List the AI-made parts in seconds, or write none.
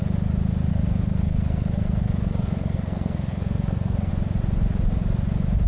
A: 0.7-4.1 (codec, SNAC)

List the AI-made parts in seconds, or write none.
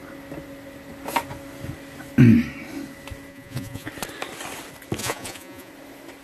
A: 3.3-3.9 (vocoder, Vocos); 5.0-5.7